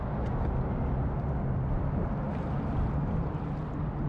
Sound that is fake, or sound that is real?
real